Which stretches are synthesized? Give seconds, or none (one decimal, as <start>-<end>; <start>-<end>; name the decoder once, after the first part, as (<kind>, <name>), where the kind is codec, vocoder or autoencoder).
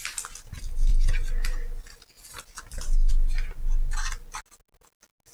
none